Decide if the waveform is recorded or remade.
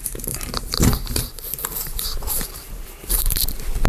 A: remade